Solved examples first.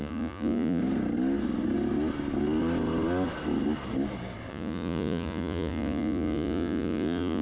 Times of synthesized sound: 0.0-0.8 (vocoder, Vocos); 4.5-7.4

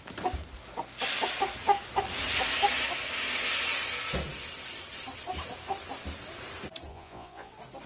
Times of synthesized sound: 6.9-7.5 (vocoder, Vocos)

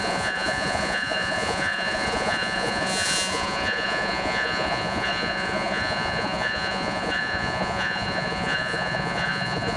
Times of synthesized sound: 0.0-9.8 (vocoder, Vocos)

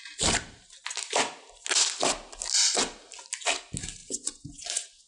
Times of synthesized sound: 4.0-5.1 (vocoder, Vocos)

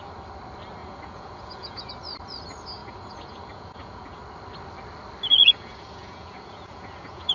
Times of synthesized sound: 0.8-1.9 (vocoder, Vocos); 2.8-4.2; 5.3-7.3

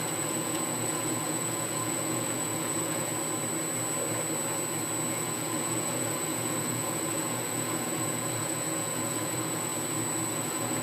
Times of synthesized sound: 0.0-3.1 (vocoder, Vocos); 5.1-9.7; 10.3-10.8

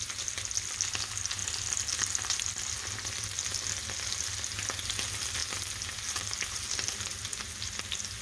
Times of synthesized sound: none

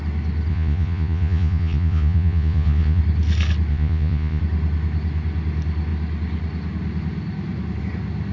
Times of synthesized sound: 0.5-3.0 (vocoder, Vocos); 3.7-4.4